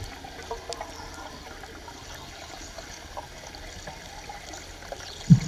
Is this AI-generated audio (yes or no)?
no